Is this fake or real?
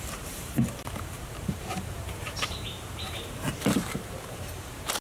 fake